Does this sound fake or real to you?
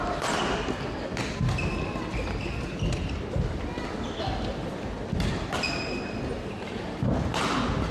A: real